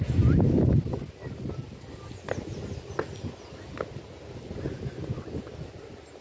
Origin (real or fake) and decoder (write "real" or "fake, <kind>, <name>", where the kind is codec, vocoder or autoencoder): real